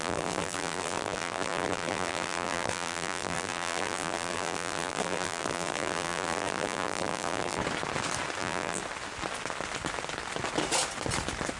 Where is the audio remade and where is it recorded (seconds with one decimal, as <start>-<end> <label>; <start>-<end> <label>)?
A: 0.0-7.6 remade; 7.6-8.4 recorded; 8.4-8.8 remade; 8.8-11.6 recorded